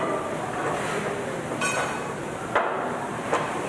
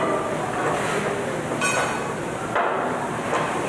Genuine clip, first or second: second